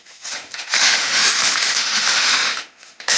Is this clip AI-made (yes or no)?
yes